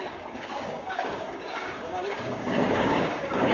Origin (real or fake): fake